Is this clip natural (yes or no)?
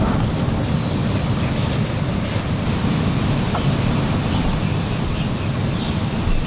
yes